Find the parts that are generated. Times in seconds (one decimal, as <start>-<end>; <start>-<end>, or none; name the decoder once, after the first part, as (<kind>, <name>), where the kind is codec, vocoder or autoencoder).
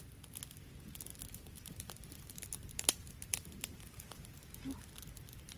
1.1-4.5 (vocoder, BigVGAN v2)